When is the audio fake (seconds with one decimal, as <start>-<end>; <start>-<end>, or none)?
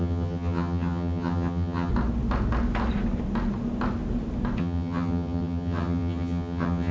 0.0-1.9; 4.6-6.9